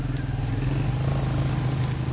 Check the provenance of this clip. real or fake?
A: real